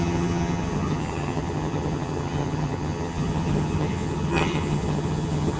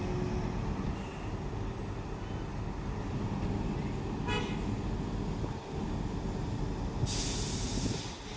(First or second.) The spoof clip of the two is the first